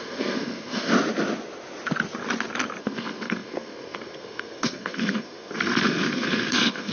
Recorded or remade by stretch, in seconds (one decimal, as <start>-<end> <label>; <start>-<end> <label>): 0.0-0.9 remade; 0.9-2.8 recorded; 2.8-6.9 remade